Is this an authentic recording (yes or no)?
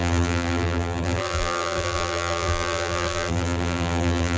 no